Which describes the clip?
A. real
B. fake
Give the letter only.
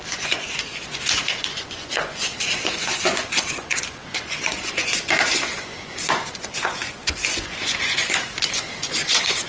B